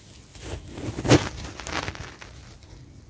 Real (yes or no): yes